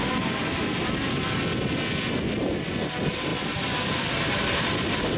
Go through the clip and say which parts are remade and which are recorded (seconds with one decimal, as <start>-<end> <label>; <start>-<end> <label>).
0.0-5.2 recorded